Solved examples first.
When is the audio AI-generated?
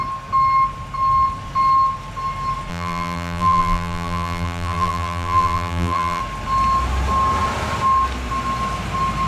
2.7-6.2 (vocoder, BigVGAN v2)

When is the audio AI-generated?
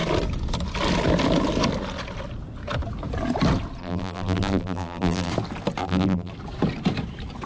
3.8-5.3 (vocoder, BigVGAN v2); 5.8-6.3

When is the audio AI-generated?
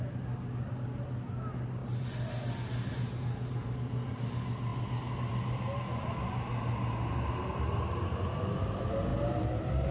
none